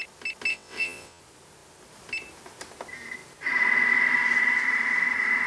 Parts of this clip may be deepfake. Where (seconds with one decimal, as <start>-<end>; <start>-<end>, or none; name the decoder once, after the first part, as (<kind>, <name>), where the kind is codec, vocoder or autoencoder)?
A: 0.5-1.2 (vocoder, WaveNeXt)